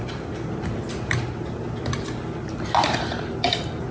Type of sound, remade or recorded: recorded